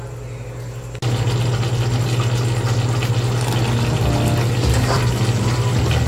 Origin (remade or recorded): recorded